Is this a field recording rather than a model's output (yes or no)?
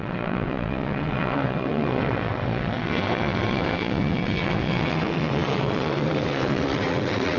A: no